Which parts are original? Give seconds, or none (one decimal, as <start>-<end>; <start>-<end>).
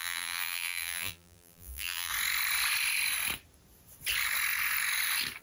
2.1-5.4